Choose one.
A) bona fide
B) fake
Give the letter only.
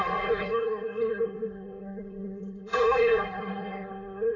B